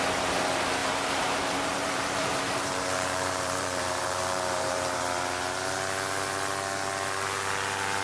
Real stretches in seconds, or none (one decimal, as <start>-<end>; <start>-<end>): 0.0-0.8; 5.0-8.0